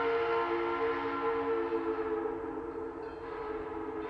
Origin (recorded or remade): recorded